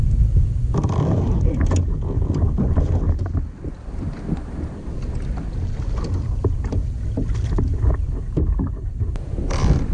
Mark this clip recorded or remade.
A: recorded